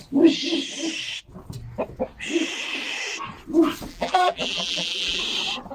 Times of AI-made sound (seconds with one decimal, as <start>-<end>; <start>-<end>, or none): 3.9-5.2